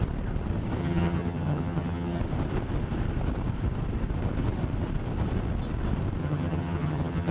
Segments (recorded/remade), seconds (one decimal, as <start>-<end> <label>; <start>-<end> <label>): 0.0-0.8 recorded; 0.8-2.2 remade; 2.2-6.2 recorded; 6.2-7.3 remade